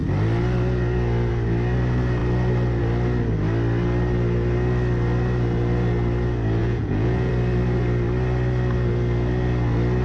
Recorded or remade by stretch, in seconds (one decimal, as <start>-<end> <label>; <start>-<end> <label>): 0.0-6.6 recorded; 6.6-7.3 remade; 7.3-10.0 recorded